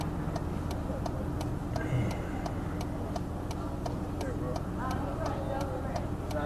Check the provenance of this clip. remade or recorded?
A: recorded